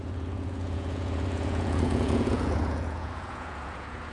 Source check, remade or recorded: remade